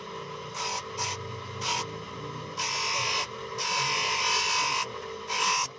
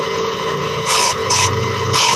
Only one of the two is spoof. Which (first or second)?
second